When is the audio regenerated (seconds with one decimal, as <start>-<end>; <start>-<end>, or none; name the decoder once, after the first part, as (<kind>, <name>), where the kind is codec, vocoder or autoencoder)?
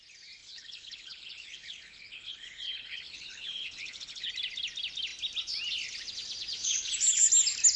0.4-4.3 (codec, HILCodec); 6.6-7.3